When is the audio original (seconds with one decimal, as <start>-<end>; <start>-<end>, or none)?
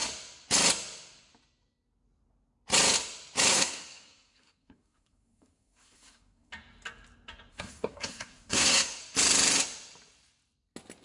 0.0-3.5; 6.5-7.5; 9.0-11.0